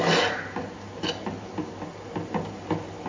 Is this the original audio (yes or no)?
yes